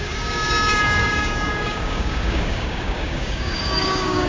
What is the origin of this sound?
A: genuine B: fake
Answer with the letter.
B